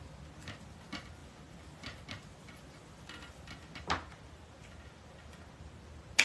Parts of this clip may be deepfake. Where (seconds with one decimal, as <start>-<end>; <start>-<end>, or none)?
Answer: none